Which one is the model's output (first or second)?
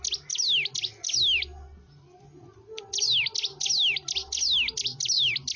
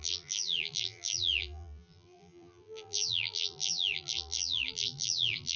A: second